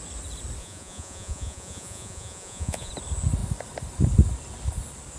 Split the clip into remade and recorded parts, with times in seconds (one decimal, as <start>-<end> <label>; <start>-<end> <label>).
0.0-0.6 recorded; 0.6-2.9 remade; 2.9-5.2 recorded